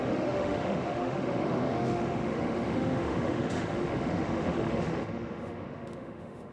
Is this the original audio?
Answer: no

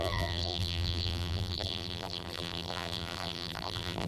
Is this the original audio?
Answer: no